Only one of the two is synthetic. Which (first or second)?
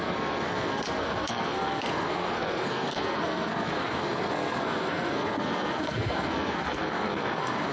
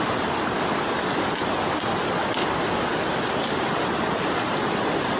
first